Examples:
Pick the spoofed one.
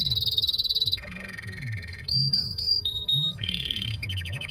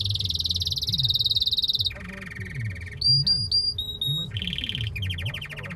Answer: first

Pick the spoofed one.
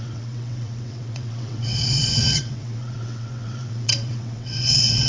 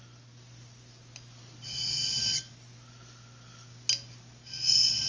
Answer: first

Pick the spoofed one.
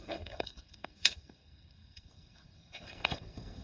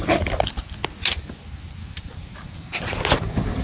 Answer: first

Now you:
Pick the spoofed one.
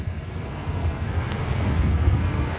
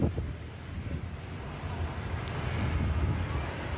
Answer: first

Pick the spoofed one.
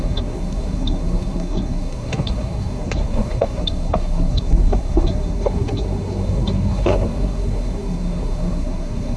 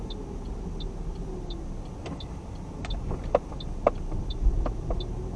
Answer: first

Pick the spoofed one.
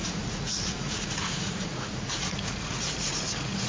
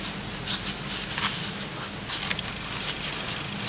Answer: first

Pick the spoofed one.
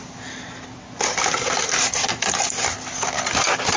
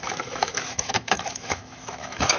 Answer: second